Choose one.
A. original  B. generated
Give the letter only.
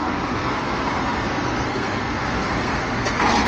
B